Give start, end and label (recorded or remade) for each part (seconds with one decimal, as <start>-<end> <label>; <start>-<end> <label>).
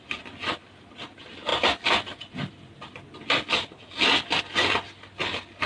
0.0-5.7 recorded